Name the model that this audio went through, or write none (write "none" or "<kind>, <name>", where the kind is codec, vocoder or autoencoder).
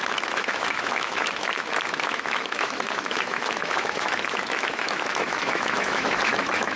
autoencoder, DAC-VAE